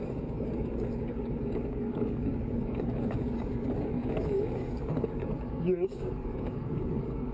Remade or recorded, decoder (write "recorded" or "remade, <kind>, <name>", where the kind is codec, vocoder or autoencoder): remade, codec, DAC